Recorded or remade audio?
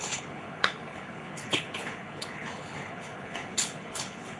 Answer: remade